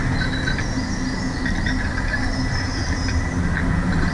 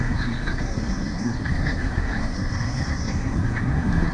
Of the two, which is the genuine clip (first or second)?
first